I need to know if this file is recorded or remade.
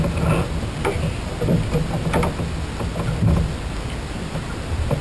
recorded